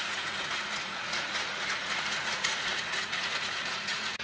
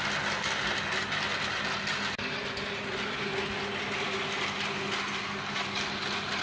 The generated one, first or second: first